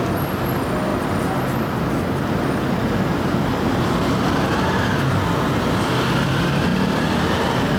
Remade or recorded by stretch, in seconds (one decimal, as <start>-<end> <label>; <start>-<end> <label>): 0.0-7.8 recorded